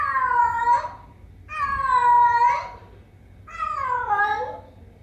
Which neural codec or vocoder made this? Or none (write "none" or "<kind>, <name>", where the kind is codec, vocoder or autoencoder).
none